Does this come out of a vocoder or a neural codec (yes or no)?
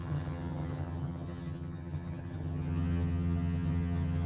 yes